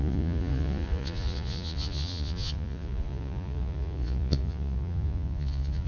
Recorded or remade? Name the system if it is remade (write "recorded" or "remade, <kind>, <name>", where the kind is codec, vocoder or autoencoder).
remade, vocoder, Vocos